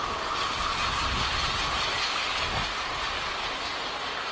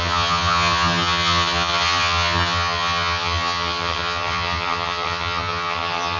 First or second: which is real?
first